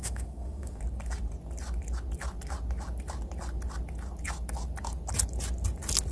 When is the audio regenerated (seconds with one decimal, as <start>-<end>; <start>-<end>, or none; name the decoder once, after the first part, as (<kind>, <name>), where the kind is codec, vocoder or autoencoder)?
0.0-0.8 (autoencoder, DAC-VAE)